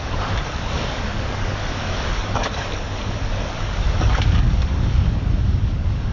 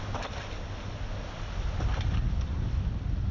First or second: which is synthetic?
first